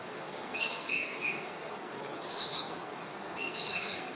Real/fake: fake